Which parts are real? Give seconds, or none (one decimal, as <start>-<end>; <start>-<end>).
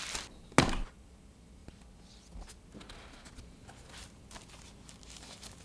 0.0-5.6